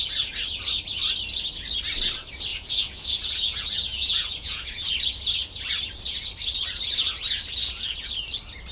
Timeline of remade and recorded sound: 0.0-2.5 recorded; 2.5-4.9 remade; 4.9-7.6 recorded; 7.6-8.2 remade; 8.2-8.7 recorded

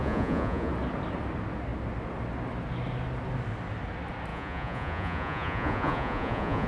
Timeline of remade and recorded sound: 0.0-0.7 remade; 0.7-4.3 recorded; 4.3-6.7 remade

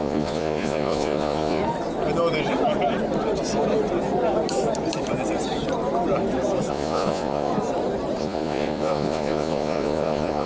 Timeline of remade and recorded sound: 0.0-1.6 remade; 1.6-6.7 recorded; 6.7-7.5 remade; 7.5-8.2 recorded; 8.2-10.5 remade